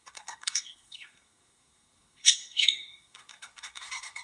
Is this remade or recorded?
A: remade